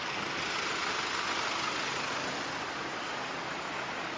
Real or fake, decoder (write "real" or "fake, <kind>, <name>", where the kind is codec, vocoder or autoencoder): real